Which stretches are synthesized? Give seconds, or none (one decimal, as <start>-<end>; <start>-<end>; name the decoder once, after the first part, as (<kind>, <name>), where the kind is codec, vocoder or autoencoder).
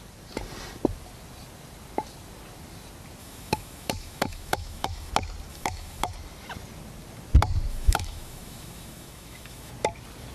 3.2-5.1 (autoencoder, DAC-VAE); 5.5-6.1; 7.7-9.7